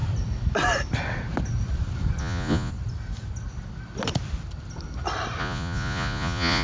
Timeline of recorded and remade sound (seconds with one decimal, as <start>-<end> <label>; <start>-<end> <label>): 0.0-2.2 recorded; 2.2-2.7 remade; 2.7-5.4 recorded; 5.4-6.6 remade